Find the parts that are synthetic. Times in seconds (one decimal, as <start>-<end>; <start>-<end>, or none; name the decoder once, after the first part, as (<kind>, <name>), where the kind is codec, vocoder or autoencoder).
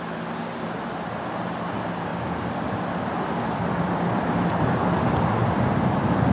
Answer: 2.1-3.1 (vocoder, BigVGAN v2)